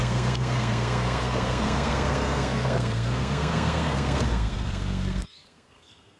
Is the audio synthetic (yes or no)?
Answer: yes